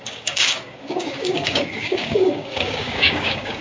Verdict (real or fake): fake